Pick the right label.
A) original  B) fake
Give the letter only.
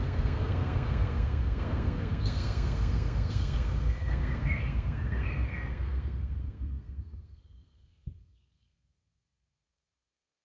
B